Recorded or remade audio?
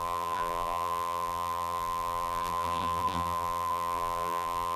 remade